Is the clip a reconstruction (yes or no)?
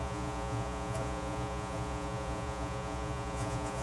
yes